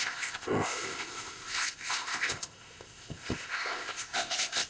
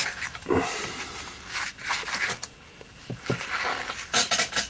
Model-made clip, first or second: first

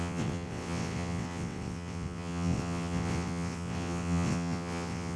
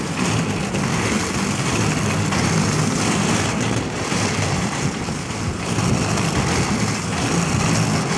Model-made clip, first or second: first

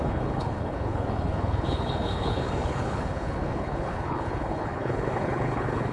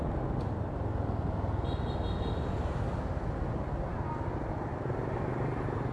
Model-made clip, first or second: first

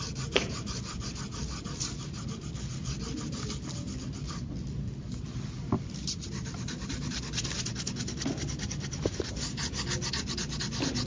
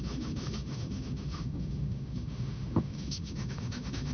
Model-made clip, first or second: second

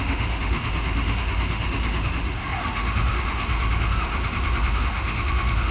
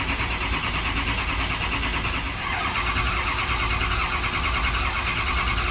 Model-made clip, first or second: first